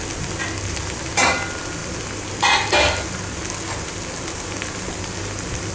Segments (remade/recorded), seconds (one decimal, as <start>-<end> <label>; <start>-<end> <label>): 0.0-5.7 recorded